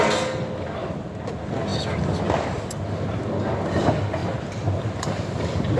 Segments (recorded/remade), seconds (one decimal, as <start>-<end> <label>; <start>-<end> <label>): 0.0-4.2 recorded; 4.2-5.8 remade